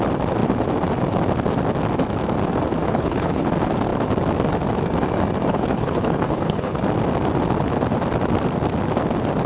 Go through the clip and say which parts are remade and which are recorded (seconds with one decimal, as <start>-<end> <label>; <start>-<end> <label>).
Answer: 0.0-2.8 recorded; 2.8-3.5 remade; 3.5-5.5 recorded; 5.5-6.8 remade; 6.8-9.5 recorded